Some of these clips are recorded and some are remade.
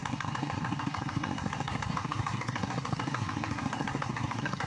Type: remade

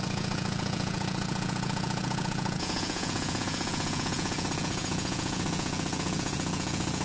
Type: remade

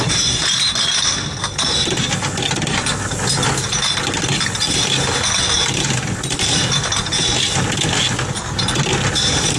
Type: recorded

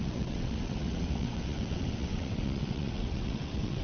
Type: remade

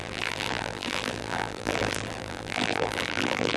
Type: remade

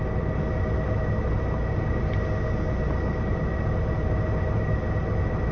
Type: recorded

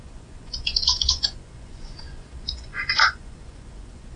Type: remade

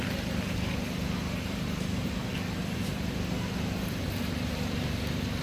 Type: recorded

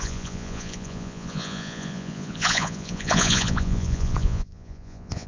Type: remade